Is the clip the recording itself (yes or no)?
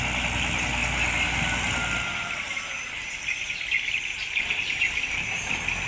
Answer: yes